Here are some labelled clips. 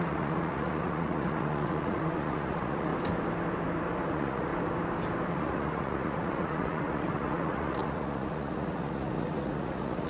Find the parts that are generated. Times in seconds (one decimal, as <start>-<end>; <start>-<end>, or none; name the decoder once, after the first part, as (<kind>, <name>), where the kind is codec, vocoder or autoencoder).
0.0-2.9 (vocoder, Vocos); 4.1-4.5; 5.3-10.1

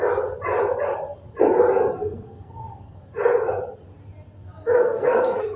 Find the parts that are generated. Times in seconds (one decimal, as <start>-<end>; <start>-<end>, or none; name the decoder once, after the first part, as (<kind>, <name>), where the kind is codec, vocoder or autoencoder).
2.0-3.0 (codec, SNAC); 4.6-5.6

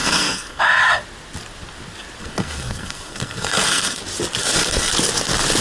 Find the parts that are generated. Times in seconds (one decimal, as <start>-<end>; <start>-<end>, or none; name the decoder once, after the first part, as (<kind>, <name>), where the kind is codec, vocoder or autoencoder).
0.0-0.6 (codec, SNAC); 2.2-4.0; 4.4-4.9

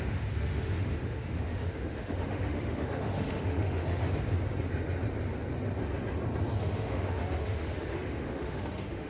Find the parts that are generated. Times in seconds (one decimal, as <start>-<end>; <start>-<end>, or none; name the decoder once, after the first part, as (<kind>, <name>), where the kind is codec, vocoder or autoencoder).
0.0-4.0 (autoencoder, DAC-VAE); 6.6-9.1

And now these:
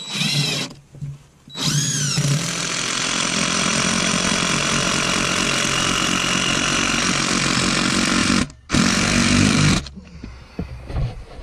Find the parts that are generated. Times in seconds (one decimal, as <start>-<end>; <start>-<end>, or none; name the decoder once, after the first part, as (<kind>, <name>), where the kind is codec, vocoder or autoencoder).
8.2-10.9 (vocoder, BigVGAN v2)